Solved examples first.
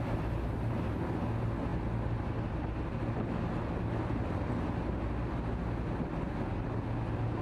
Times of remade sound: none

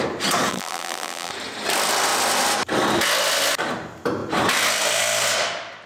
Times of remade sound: 0.5-1.3

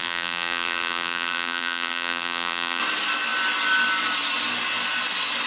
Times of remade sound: 0.0-2.8

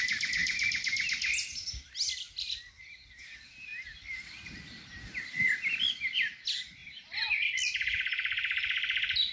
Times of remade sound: 0.0-9.3